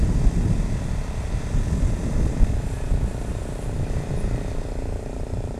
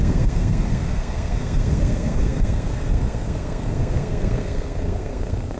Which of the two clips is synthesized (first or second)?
second